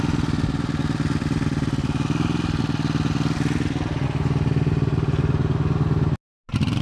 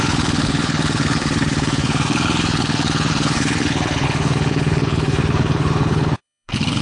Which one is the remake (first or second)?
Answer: second